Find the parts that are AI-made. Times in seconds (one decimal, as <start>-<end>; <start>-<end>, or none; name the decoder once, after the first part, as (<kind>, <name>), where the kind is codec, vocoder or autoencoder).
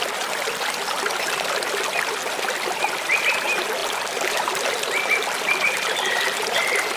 3.8-6.4 (vocoder, BigVGAN v2)